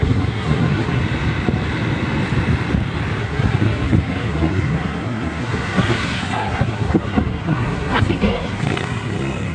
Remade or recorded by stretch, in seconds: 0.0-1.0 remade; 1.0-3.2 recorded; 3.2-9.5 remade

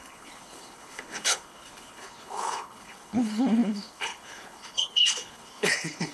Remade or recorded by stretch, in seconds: 0.0-6.1 remade

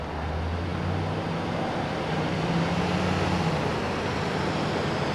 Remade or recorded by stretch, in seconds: 0.0-5.1 recorded

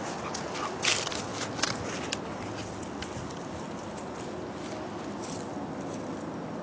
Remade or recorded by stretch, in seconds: 0.0-6.6 recorded

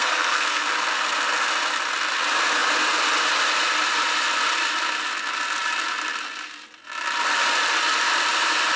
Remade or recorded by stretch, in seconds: 0.0-0.6 remade; 0.6-8.8 recorded